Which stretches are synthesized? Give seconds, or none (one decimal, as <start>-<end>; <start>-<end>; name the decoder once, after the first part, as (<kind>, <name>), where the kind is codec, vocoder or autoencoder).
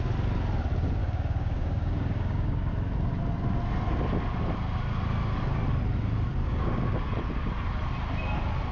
1.0-2.7 (codec, DAC); 6.4-7.1